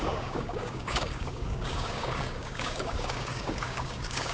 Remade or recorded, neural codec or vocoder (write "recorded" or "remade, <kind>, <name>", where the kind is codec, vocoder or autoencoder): remade, codec, DAC